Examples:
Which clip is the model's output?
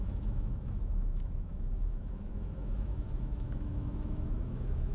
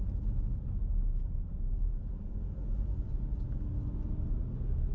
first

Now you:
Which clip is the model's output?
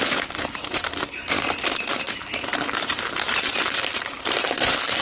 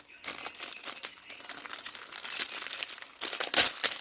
first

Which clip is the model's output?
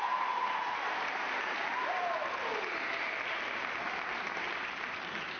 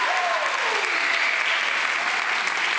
first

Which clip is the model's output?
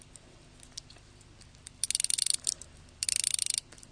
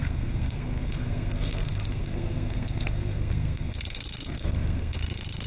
second